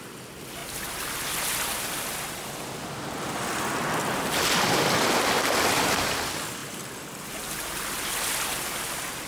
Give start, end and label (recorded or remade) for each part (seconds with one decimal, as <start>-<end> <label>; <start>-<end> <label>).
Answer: 0.0-9.3 recorded